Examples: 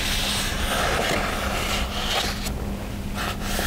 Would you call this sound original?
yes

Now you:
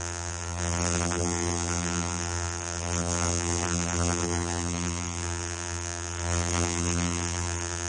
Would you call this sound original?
no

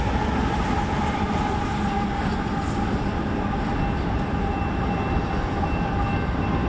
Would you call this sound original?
yes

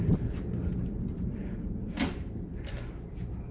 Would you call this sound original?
no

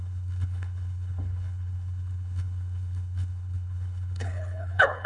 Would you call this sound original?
no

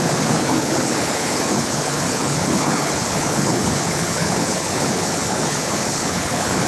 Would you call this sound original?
no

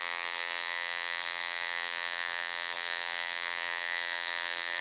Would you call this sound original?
no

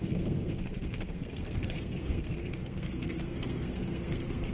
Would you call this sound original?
no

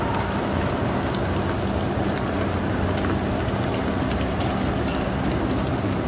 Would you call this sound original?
yes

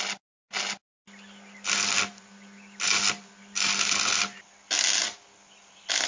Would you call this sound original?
yes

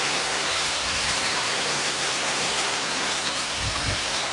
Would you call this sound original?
no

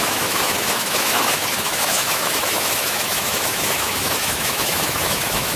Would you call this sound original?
no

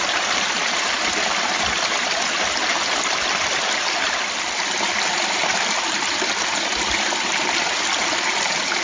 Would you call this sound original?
yes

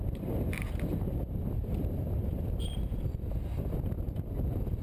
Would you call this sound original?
no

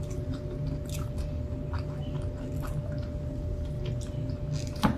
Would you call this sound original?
yes